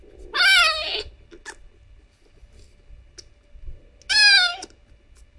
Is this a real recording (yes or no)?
yes